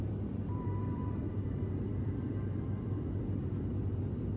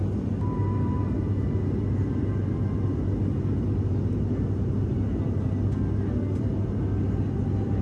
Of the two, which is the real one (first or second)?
second